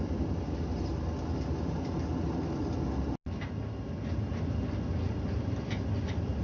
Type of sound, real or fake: real